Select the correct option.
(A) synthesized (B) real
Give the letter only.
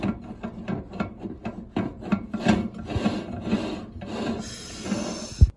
B